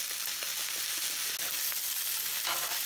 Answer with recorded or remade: recorded